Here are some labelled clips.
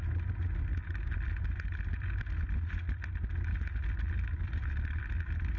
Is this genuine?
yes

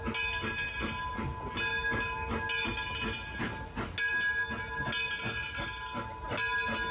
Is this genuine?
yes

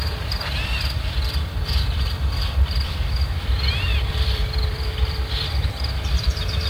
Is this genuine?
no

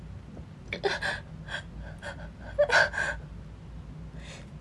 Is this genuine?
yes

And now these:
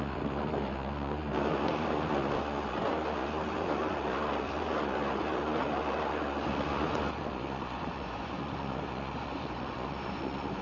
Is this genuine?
no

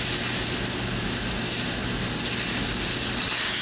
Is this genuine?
yes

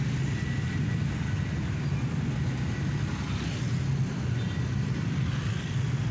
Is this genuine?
yes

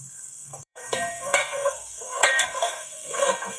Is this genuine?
no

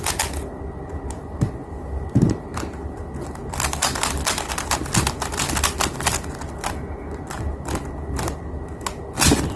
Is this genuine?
yes